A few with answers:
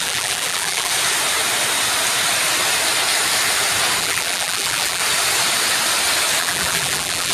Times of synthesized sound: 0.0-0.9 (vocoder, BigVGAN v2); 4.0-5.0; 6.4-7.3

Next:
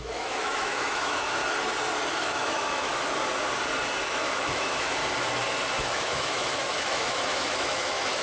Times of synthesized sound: 0.0-1.4 (autoencoder, DAC-VAE); 2.1-2.9; 4.0-5.0; 5.8-8.2

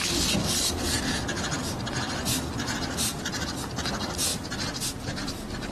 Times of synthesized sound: none